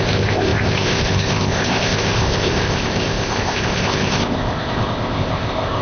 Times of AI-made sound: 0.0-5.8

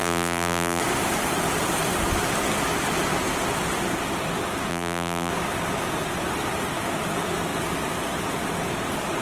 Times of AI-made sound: 0.0-0.8; 4.7-5.3